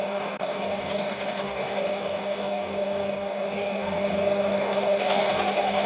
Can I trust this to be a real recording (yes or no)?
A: no